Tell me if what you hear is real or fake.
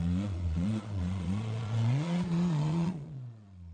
fake